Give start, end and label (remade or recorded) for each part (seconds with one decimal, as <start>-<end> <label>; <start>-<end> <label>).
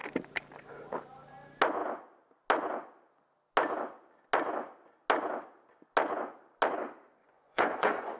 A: 0.0-7.2 recorded; 7.2-8.2 remade